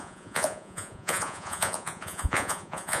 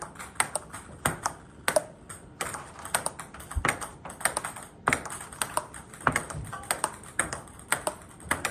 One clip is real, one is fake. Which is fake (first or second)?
first